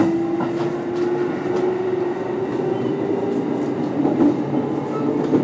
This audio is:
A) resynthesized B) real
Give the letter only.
B